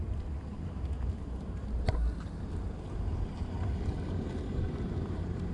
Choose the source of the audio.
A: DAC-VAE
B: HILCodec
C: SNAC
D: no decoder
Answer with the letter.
D